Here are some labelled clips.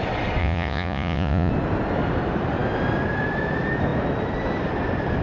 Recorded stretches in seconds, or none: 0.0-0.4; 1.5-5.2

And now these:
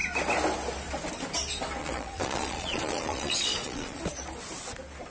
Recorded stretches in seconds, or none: 0.0-1.8; 4.0-5.1

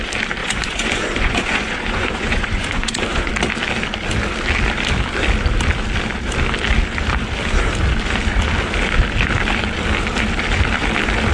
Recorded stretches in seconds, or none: 0.0-0.4; 3.3-11.3

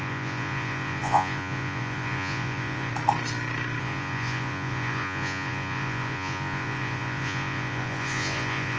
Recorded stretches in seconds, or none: 2.9-3.8

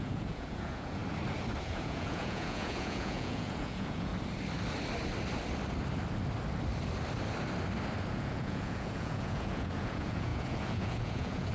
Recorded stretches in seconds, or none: 1.0-1.6; 4.1-8.1

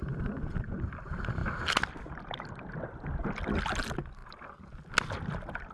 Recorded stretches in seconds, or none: 0.0-5.7

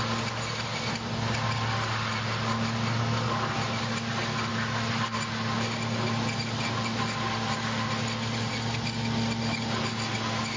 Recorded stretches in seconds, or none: 0.0-10.6